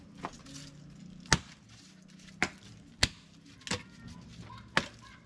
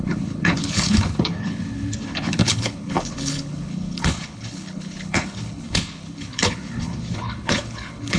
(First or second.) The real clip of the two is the first